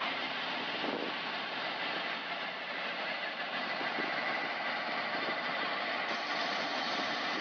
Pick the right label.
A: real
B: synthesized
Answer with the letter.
A